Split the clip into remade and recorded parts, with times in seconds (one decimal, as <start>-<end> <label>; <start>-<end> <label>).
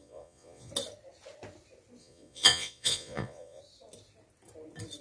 0.0-0.7 remade; 0.7-2.0 recorded; 2.0-3.6 remade; 3.6-5.0 recorded